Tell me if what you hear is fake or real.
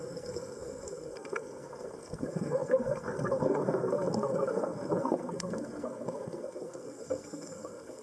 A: fake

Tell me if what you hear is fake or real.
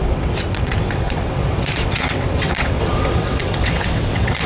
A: fake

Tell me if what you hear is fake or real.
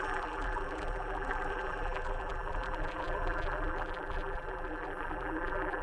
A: fake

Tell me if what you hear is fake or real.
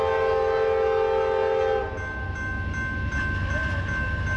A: real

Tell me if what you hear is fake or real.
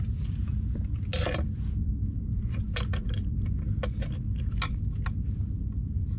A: real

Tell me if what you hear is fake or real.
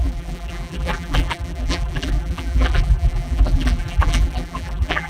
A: fake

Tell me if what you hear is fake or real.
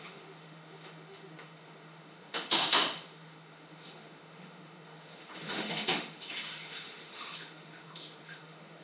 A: fake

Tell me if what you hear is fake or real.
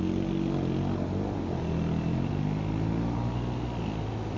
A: real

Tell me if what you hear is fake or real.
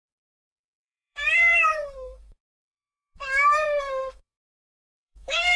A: fake